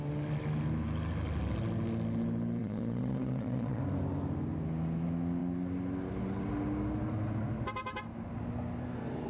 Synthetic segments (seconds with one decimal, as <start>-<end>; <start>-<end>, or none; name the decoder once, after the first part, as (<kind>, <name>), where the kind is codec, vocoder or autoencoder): 2.6-3.8 (vocoder, Vocos)